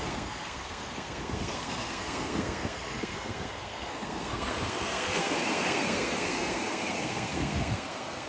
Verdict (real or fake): fake